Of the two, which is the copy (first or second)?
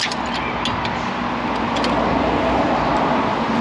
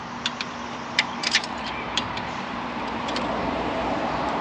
second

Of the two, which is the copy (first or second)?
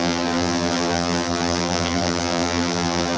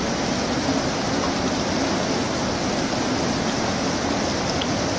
first